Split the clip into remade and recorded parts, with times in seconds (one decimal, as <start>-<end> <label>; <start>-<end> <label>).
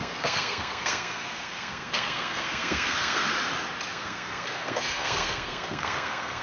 0.0-3.3 remade; 3.3-3.9 recorded; 3.9-6.4 remade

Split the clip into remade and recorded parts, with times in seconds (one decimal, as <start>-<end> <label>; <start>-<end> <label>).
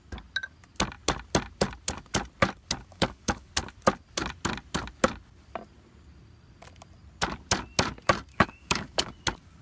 0.0-2.9 recorded; 2.9-3.5 remade; 3.5-8.3 recorded; 8.3-9.1 remade; 9.1-9.6 recorded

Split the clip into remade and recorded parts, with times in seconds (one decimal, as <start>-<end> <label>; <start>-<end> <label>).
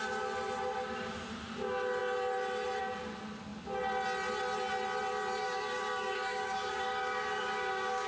0.0-5.4 recorded; 5.4-8.1 remade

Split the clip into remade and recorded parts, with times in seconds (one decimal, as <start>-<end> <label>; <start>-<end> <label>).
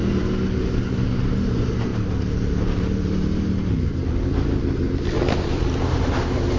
0.0-6.6 recorded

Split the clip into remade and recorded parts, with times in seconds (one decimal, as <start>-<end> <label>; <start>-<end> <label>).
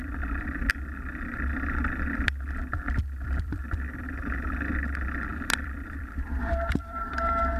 0.0-0.7 remade; 0.7-3.0 recorded; 3.0-4.1 remade; 4.1-5.3 recorded; 5.3-7.1 remade; 7.1-7.6 recorded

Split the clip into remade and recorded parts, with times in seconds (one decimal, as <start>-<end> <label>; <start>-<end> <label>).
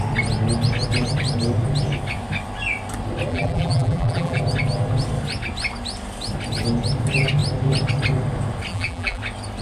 0.0-3.3 recorded; 3.3-4.4 remade; 4.4-8.7 recorded; 8.7-9.2 remade; 9.2-9.6 recorded